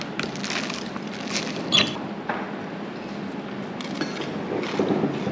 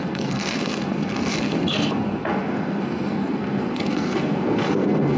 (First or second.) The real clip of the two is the first